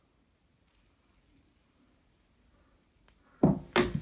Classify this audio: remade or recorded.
recorded